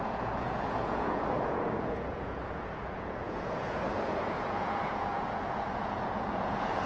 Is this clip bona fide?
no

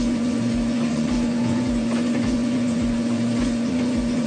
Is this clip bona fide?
no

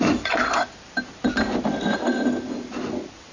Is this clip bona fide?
yes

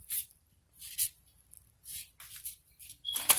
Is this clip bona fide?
yes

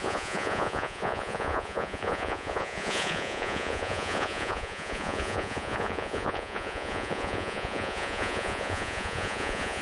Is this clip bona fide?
no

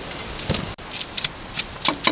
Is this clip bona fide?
yes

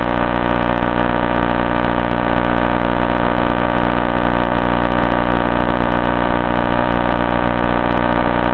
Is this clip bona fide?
no